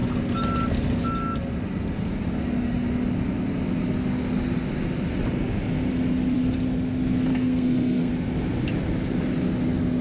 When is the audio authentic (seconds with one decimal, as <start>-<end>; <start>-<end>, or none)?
0.0-7.3; 8.1-10.0